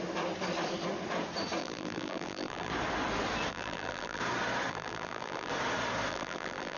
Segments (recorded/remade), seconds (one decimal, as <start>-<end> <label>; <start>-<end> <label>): 0.0-1.6 recorded; 1.6-2.7 remade; 2.7-3.5 recorded; 3.5-4.2 remade; 4.2-4.7 recorded; 4.7-5.5 remade; 5.5-6.1 recorded; 6.1-6.8 remade

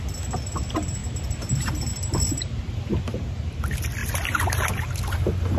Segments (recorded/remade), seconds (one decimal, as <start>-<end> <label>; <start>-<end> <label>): 0.0-4.0 recorded; 4.0-4.7 remade; 4.7-5.6 recorded

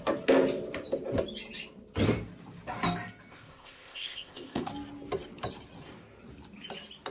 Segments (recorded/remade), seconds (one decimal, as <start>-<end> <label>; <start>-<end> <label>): 0.0-3.3 recorded; 3.3-4.7 remade; 4.7-7.1 recorded

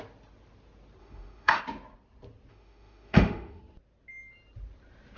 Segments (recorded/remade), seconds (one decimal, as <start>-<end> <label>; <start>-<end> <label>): 0.0-1.0 recorded; 1.0-1.6 remade; 1.6-2.5 recorded; 2.5-3.6 remade; 3.6-5.2 recorded

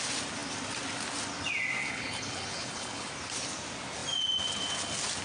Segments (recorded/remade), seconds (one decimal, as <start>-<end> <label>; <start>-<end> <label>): 0.0-1.8 recorded; 1.8-3.1 remade; 3.1-5.2 recorded

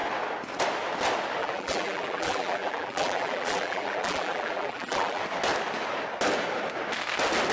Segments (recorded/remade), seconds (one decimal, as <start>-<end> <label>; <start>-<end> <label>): 0.0-1.4 recorded; 1.4-5.2 remade; 5.2-7.5 recorded

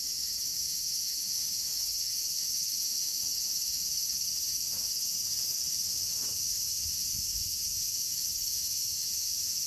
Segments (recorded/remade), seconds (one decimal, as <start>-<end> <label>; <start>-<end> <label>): 0.0-9.7 remade